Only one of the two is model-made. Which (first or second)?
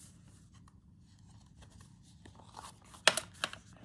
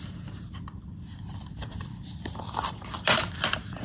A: second